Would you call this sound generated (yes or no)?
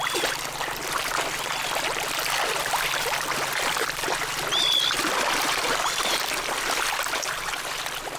no